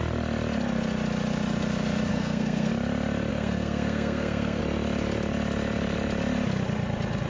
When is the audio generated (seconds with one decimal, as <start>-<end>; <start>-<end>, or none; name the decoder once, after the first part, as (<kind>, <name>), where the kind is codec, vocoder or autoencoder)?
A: 2.1-2.7 (codec, SNAC); 3.3-4.6